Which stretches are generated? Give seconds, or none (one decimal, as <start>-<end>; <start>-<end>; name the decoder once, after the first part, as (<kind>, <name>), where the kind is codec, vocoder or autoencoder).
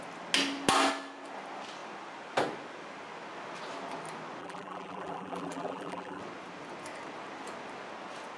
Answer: 4.4-6.2 (vocoder, BigVGAN v2)